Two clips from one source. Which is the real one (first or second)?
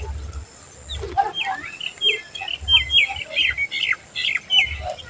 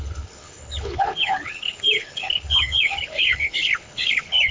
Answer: first